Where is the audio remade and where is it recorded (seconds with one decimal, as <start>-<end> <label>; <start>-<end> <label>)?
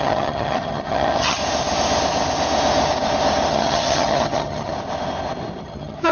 0.0-1.4 remade; 1.4-3.5 recorded; 3.5-4.7 remade; 4.7-5.6 recorded; 5.6-6.1 remade